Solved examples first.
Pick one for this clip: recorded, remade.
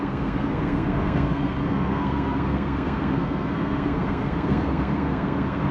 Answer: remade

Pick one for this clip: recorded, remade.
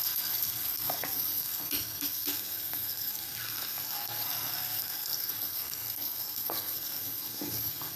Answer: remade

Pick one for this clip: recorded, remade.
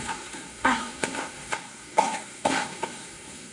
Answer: remade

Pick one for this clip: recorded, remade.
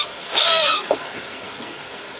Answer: remade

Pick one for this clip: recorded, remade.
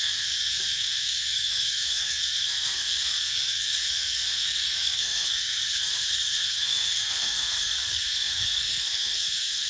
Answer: remade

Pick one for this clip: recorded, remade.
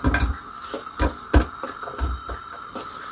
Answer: recorded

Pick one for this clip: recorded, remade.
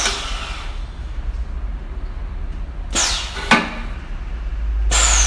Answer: recorded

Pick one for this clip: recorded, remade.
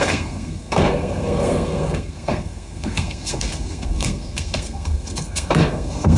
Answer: remade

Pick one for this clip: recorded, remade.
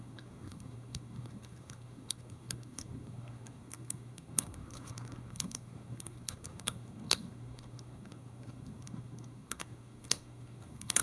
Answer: remade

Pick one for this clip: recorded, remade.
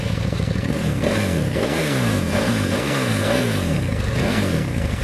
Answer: remade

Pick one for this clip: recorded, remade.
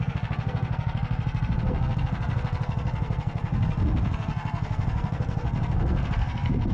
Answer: remade